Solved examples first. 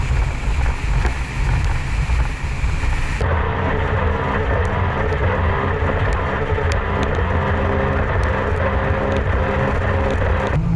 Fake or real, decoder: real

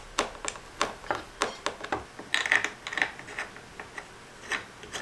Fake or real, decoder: real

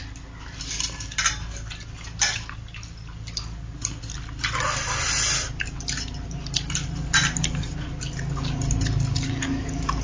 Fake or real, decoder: fake, vocoder, BigVGAN v2